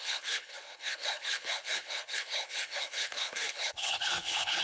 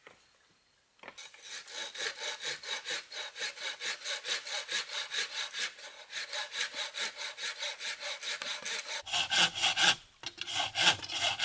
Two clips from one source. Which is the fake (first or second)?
first